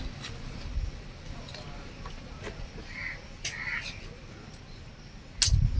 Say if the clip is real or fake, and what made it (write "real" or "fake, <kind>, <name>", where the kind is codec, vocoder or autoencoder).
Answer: real